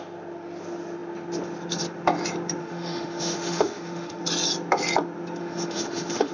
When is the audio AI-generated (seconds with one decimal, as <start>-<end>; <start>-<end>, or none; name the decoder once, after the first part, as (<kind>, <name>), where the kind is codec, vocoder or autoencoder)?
2.6-4.2 (autoencoder, DAC-VAE); 5.4-6.3